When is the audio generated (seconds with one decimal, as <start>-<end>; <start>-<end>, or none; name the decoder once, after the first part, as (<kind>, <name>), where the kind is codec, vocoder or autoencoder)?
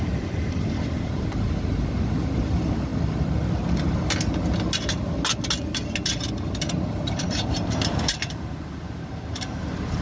0.0-2.9 (vocoder, BigVGAN v2); 6.9-10.0